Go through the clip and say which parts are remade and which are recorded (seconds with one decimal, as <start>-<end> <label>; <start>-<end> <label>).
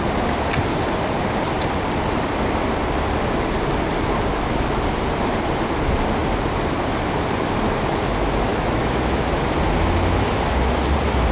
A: 0.0-8.5 recorded; 8.5-9.4 remade; 9.4-11.3 recorded